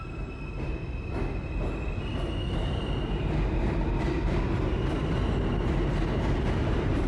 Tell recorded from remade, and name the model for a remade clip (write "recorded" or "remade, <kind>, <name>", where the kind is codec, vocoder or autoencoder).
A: recorded